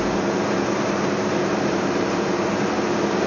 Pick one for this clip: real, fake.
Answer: fake